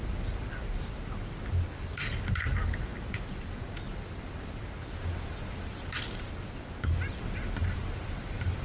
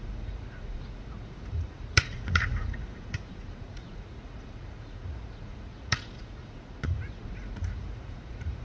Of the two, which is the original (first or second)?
first